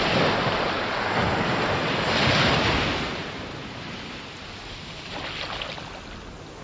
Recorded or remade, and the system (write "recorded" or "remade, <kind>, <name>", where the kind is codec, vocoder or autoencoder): recorded